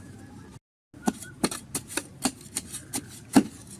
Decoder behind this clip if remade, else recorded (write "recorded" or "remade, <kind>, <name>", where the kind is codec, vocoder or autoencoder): recorded